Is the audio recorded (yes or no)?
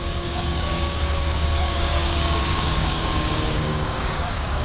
no